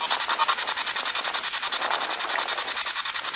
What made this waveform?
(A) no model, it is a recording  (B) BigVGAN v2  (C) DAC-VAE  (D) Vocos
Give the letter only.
A